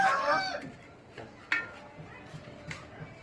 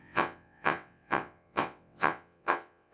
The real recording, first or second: first